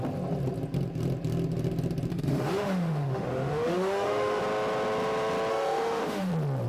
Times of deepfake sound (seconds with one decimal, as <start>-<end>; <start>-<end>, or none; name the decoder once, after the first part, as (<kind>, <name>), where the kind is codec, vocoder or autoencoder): 2.1-4.4 (autoencoder, DAC-VAE); 5.5-6.3